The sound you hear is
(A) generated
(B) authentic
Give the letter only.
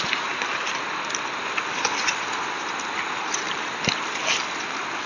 B